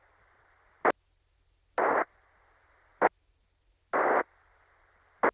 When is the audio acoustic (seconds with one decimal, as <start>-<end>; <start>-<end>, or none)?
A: 0.0-5.3

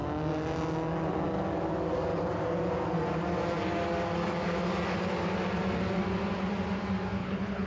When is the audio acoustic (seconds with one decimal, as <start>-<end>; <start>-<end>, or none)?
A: 0.0-7.2

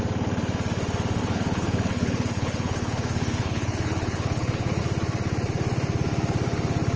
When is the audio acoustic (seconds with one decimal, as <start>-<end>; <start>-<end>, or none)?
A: 0.0-1.2; 4.8-7.0

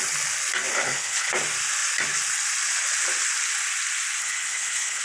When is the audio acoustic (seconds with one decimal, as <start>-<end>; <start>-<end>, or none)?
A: 0.0-0.7; 1.3-4.2

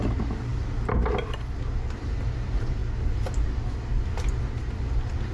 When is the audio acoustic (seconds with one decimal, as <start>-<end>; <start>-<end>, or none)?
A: 0.0-5.3